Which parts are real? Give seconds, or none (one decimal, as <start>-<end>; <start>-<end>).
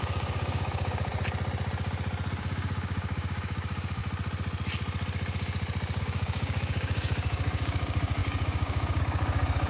1.1-2.4; 4.0-6.0